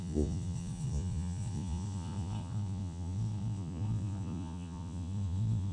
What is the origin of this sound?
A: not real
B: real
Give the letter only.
A